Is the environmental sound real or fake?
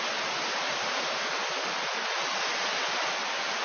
real